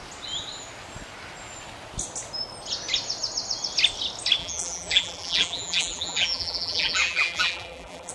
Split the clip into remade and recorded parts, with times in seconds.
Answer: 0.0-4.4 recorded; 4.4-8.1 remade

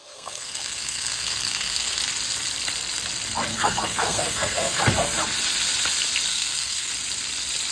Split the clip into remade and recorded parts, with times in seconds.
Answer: 0.0-2.0 remade; 2.0-3.5 recorded; 3.5-4.8 remade; 4.8-6.3 recorded; 6.3-6.9 remade; 6.9-7.7 recorded

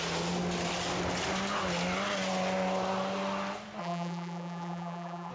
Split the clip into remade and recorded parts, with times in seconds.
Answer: 0.0-3.8 recorded; 3.8-5.3 remade

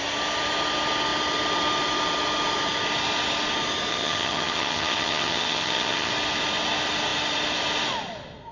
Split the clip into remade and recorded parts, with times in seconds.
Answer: 0.0-3.9 recorded; 3.9-6.1 remade; 6.1-8.5 recorded

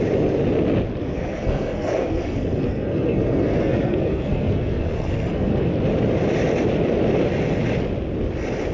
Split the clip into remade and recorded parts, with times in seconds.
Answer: 0.0-1.0 recorded; 1.0-5.7 remade; 5.7-8.7 recorded

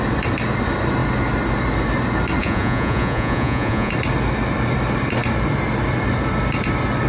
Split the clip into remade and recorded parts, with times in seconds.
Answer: 0.0-2.4 recorded; 2.4-3.9 remade; 3.9-7.1 recorded

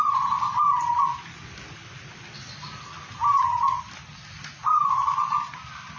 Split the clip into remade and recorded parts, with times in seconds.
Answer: 0.0-6.0 recorded

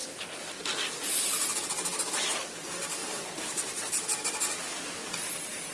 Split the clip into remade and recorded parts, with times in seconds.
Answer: 0.0-5.7 recorded